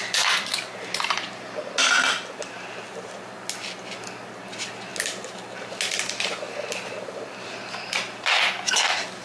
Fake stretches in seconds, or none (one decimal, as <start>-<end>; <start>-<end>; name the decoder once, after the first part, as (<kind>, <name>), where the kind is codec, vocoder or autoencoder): none